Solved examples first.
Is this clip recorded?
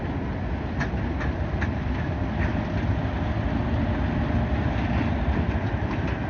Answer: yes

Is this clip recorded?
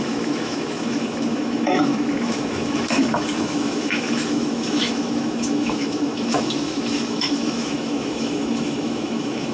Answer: no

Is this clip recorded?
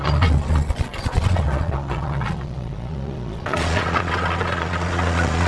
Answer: no